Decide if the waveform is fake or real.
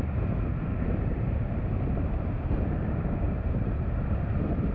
fake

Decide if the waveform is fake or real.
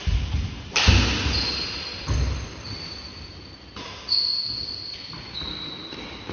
real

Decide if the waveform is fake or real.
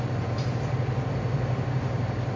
fake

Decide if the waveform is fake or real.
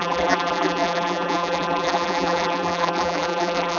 fake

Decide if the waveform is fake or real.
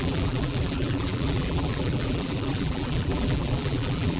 fake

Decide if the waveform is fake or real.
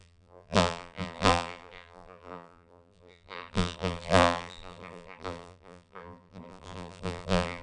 fake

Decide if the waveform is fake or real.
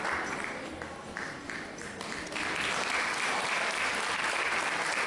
fake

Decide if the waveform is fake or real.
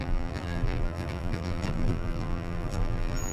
fake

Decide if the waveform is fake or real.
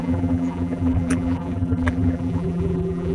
fake